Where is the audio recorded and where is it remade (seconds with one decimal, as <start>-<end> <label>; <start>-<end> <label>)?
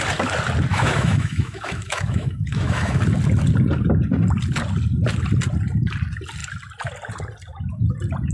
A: 0.0-0.7 recorded; 0.7-3.0 remade; 3.0-8.3 recorded